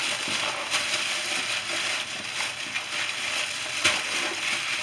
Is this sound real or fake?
real